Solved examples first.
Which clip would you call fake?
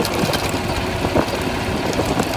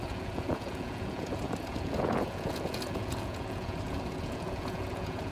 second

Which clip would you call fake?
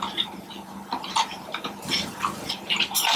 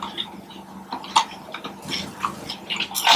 first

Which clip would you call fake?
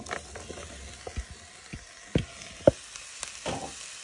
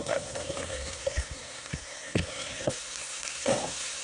second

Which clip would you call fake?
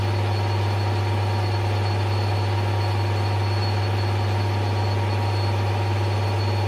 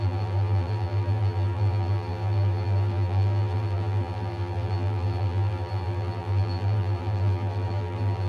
second